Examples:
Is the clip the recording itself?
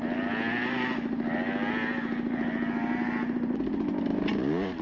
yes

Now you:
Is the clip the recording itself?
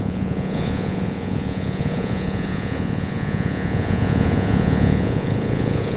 no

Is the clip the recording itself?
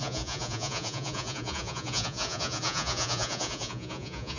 no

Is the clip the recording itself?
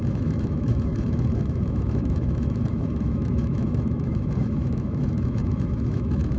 no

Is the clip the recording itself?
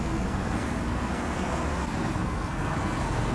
no